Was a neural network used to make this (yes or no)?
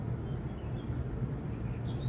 no